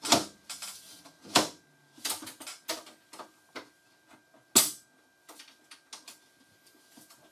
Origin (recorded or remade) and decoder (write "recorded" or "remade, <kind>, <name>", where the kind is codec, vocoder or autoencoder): recorded